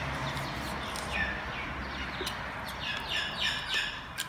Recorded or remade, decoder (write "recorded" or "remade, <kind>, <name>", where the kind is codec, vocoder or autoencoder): recorded